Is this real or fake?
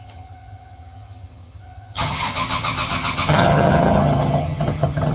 fake